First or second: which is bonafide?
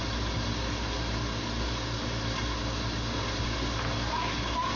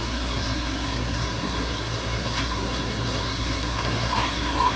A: first